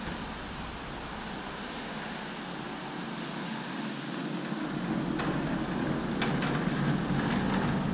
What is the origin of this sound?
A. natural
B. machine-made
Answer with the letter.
A